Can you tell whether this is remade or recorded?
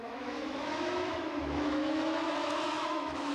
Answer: remade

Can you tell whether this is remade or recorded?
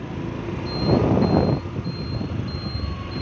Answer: recorded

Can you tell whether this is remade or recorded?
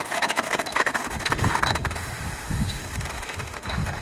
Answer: remade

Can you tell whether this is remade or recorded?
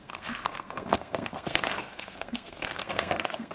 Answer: remade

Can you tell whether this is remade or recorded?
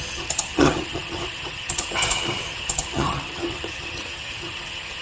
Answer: remade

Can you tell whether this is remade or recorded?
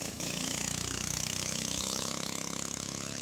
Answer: remade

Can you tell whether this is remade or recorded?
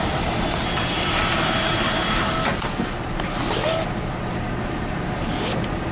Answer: recorded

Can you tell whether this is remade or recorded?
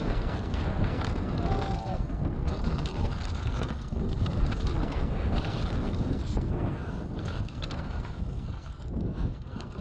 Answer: remade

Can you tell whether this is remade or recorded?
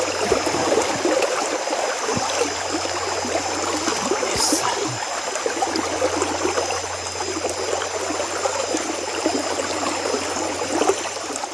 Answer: recorded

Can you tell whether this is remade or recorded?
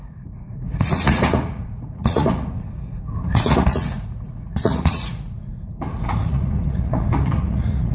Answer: remade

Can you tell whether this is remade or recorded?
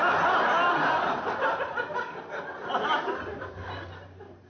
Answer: recorded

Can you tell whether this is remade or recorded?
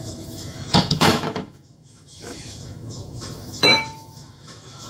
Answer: remade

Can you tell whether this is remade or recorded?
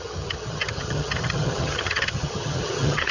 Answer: remade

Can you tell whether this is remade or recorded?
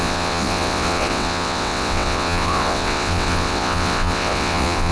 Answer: remade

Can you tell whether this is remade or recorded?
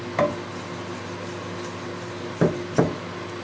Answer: recorded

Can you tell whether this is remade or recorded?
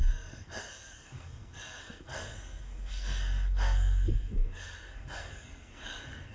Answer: remade